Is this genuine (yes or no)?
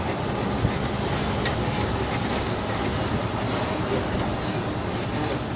yes